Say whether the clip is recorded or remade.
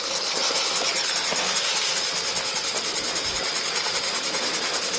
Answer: recorded